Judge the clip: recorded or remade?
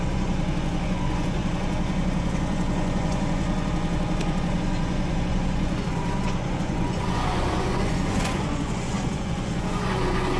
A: remade